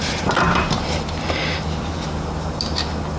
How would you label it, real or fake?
real